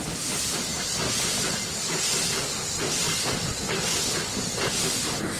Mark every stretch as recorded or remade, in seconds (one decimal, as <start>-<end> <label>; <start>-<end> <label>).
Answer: 0.0-5.4 recorded